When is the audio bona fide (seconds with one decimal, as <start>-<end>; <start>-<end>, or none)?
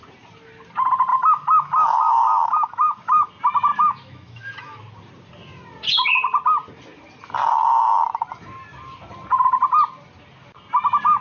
0.0-1.1; 3.3-3.7; 4.8-11.2